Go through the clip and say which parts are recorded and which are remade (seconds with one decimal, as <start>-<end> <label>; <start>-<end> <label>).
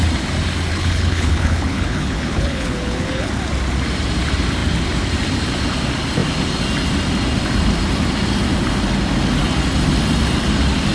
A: 0.0-0.7 recorded; 0.7-3.3 remade; 3.3-10.9 recorded